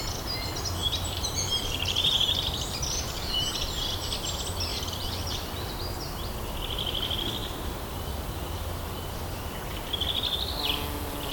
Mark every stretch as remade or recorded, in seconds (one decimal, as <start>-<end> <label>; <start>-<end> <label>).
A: 0.0-0.8 recorded; 0.8-4.1 remade; 4.1-4.7 recorded; 4.7-5.7 remade; 5.7-7.4 recorded; 7.4-9.9 remade; 9.9-11.3 recorded